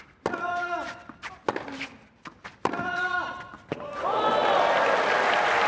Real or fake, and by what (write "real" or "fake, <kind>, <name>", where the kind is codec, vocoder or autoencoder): real